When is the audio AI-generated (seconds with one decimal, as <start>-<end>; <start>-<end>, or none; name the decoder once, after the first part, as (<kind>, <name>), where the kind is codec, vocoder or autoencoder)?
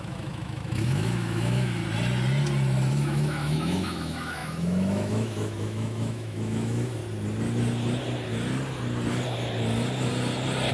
0.0-1.8 (autoencoder, DAC-VAE); 2.9-7.0